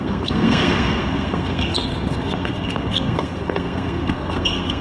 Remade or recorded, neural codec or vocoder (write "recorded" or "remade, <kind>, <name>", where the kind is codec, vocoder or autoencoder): remade, codec, SNAC